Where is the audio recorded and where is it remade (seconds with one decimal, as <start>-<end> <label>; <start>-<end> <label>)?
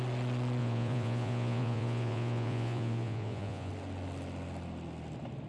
0.0-0.6 recorded; 0.6-3.7 remade; 3.7-5.5 recorded